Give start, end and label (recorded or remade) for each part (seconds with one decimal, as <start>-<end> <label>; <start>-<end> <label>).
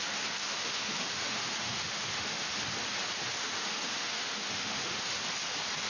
0.0-0.4 recorded; 0.4-2.5 remade; 2.5-3.4 recorded; 3.4-5.2 remade; 5.2-5.9 recorded